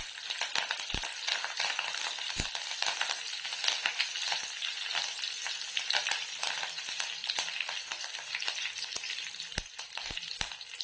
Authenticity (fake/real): real